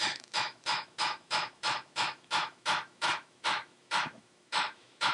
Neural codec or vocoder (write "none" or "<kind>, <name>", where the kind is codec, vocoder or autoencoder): autoencoder, DAC-VAE